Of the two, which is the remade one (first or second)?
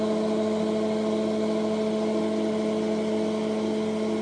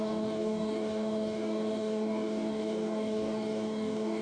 second